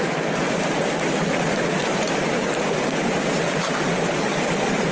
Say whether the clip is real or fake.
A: real